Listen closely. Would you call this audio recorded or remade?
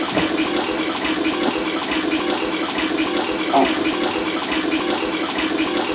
recorded